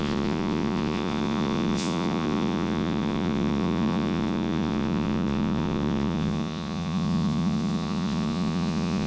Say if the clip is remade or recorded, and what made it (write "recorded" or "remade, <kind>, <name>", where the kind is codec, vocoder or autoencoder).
remade, vocoder, Vocos